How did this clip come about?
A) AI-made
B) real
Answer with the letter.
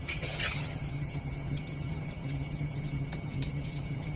A